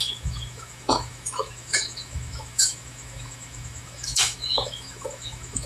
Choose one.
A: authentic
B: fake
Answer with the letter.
B